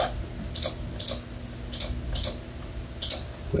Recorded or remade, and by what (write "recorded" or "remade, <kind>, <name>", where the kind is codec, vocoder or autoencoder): recorded